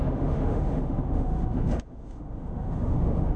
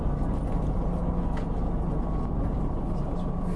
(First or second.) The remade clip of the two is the first